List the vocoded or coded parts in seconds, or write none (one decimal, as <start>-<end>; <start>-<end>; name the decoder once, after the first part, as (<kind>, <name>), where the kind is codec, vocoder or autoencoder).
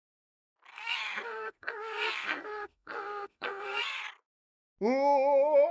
0.7-4.1 (codec, SNAC)